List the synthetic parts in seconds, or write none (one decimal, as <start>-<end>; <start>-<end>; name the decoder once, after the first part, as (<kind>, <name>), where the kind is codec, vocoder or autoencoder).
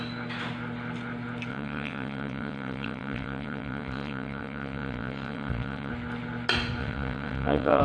1.5-5.9 (vocoder, WaveNeXt); 6.8-7.8